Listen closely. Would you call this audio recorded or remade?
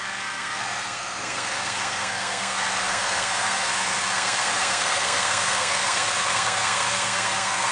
remade